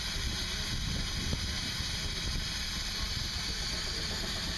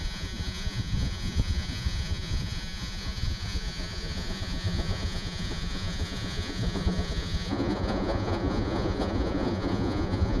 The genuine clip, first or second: first